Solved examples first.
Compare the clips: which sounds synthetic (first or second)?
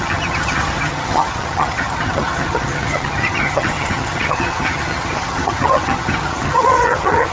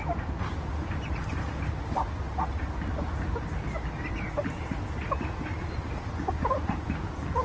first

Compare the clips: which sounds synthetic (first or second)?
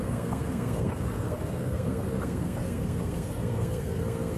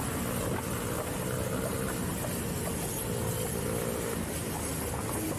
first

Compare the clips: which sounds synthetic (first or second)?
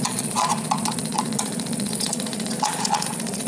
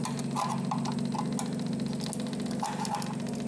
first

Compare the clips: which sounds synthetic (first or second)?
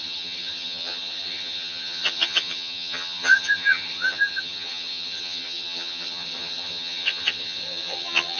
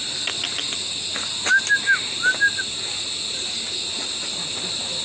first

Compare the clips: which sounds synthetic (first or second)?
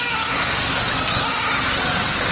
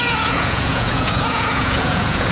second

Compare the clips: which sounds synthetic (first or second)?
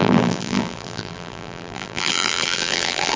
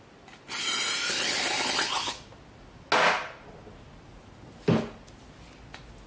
first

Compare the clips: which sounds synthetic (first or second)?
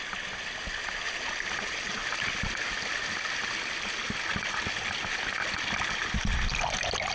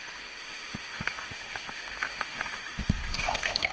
second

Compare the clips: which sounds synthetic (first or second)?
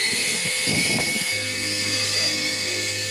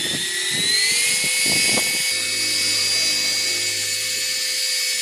first